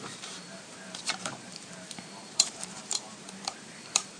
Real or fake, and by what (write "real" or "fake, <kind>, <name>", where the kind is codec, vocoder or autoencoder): fake, vocoder, BigVGAN v2